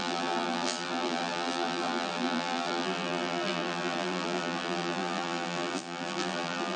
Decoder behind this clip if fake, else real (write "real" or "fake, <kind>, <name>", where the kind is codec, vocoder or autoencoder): fake, vocoder, BigVGAN v2